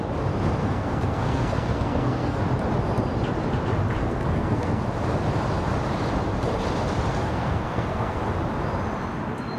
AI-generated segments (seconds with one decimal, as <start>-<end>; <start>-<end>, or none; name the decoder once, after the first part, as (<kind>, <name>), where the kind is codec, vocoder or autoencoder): 0.6-2.4 (codec, SNAC); 4.0-4.8; 7.1-8.2